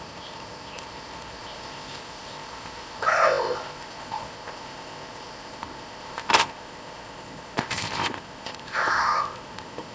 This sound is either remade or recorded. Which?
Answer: remade